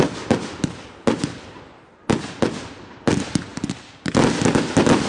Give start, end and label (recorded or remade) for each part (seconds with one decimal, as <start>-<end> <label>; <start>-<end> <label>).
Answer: 0.0-5.1 recorded